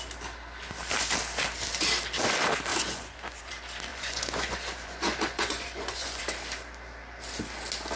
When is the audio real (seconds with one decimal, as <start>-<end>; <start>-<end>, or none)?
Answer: 0.0-2.7; 3.5-3.9; 6.2-8.0

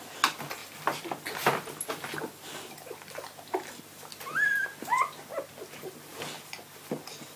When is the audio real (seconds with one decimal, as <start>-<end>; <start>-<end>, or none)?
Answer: 0.0-7.4